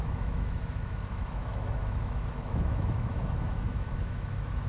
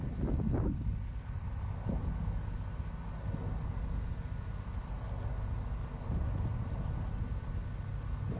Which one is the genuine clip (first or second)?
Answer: second